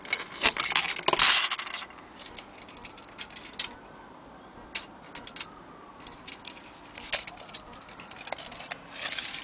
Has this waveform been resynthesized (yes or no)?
no